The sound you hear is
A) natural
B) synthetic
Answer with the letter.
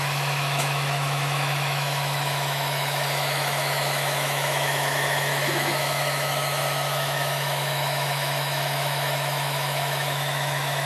B